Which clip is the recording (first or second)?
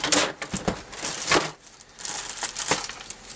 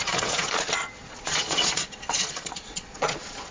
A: first